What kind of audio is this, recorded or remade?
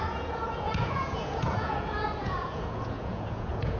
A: remade